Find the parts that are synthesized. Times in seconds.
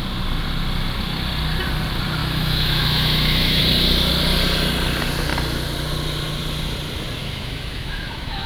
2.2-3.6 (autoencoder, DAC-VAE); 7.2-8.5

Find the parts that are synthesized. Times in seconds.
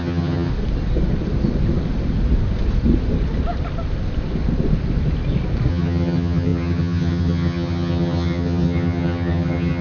0.0-0.5 (vocoder, HiFi-GAN); 5.7-9.8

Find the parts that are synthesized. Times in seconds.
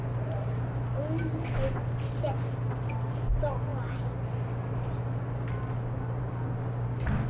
none